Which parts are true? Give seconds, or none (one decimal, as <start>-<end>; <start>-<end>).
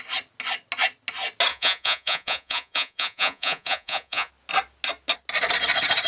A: 0.0-1.5; 4.3-6.1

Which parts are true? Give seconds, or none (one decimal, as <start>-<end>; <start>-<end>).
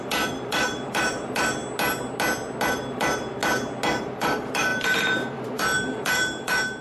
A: 1.6-2.7; 3.4-4.0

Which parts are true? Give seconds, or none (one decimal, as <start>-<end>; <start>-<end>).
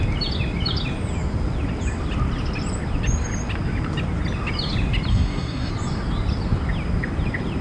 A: 0.0-5.1; 5.7-7.6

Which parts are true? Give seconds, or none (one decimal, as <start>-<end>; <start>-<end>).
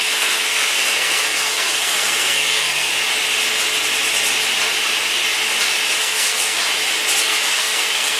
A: 2.9-6.0; 6.6-7.2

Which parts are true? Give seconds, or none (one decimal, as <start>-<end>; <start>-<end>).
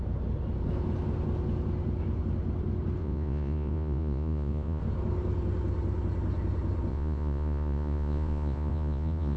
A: 0.0-3.0; 4.8-6.9